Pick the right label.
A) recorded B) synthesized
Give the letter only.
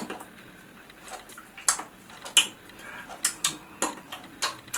A